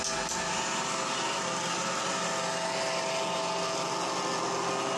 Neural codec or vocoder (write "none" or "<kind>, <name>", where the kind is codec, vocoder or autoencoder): none